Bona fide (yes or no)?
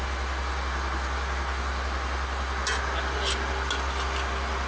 yes